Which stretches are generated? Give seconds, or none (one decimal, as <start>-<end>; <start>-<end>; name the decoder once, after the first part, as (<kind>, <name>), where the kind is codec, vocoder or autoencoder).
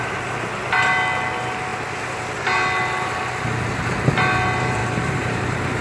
4.8-5.8 (vocoder, BigVGAN v2)